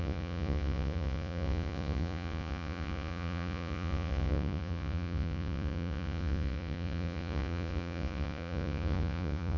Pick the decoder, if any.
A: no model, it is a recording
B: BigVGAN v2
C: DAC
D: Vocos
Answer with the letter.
D